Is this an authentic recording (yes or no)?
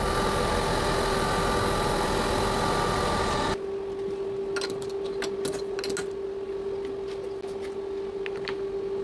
yes